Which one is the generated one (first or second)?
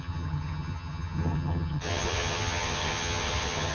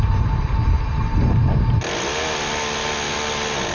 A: first